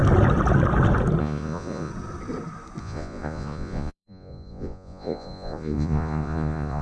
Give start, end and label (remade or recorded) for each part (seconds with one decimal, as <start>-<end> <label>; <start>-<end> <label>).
0.0-1.2 recorded; 1.2-1.9 remade; 1.9-2.8 recorded; 2.8-6.8 remade